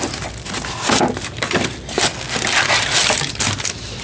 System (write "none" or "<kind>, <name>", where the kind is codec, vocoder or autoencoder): none